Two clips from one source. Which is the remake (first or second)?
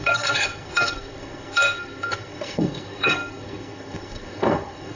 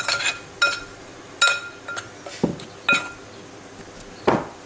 first